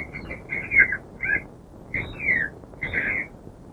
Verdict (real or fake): real